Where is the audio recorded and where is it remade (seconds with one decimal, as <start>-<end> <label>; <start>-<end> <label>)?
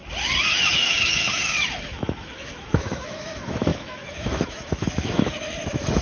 0.0-0.7 recorded; 0.7-6.0 remade